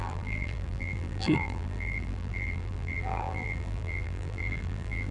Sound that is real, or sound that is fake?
fake